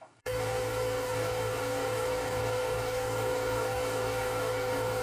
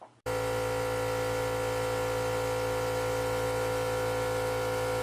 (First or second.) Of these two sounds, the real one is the second